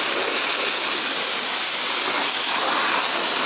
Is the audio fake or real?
real